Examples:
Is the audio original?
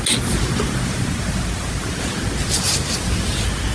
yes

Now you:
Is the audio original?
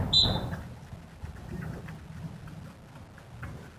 yes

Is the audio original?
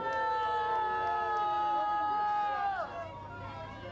yes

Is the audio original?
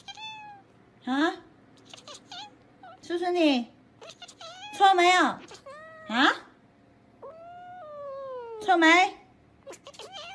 yes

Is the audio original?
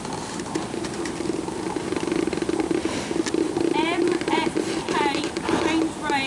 yes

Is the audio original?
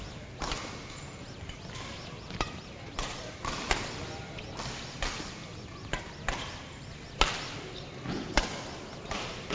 yes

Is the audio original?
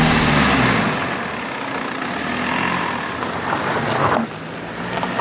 yes